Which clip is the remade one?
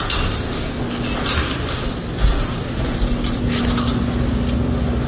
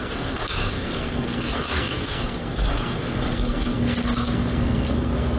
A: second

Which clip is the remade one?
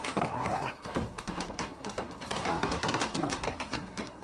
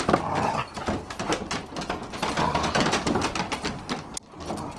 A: first